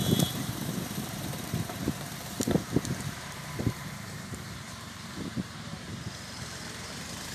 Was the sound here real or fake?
fake